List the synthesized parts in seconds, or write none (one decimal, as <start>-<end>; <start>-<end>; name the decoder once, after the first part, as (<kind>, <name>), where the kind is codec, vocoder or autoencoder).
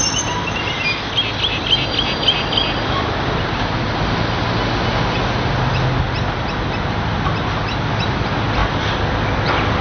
none